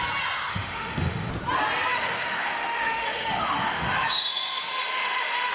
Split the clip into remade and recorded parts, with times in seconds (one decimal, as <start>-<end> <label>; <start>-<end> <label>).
0.0-0.5 recorded; 0.5-1.3 remade; 1.3-1.9 recorded; 1.9-5.5 remade